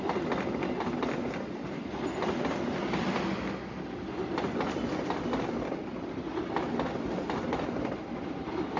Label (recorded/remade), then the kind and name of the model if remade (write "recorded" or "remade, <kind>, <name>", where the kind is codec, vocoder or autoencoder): recorded